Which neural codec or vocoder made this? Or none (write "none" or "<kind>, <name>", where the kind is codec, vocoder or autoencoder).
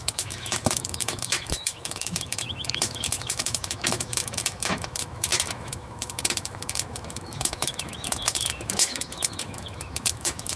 autoencoder, DAC-VAE